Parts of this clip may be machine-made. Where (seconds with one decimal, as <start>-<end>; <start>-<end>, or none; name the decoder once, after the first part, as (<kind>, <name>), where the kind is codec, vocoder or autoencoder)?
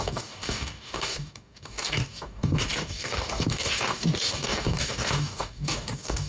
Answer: 0.0-6.3 (codec, DAC)